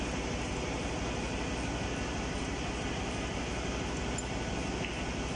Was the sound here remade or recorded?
recorded